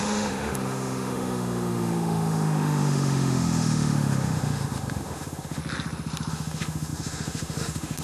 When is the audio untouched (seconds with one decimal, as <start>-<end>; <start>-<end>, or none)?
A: 5.6-6.3